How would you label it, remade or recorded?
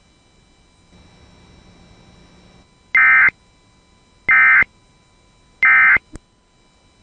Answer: recorded